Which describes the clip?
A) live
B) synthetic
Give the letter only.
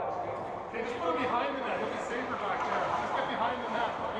B